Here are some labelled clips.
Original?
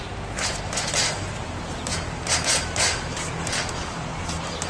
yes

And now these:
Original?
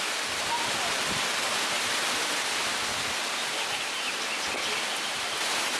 yes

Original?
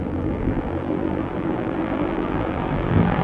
no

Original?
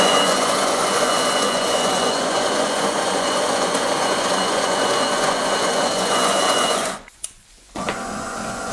no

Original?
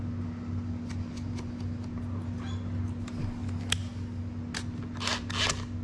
yes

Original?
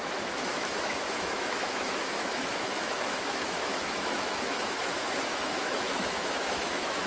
no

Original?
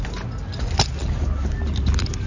yes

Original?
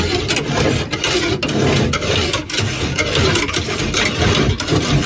yes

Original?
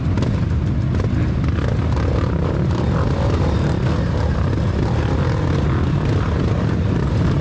yes